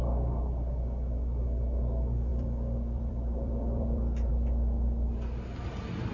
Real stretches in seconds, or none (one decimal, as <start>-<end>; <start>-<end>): 0.0-2.3; 4.3-6.1